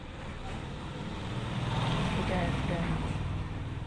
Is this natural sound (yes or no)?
no